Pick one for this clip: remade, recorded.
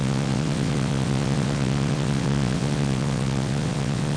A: remade